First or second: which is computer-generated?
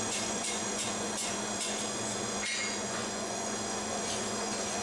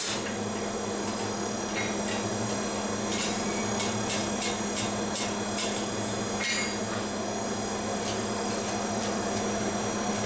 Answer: first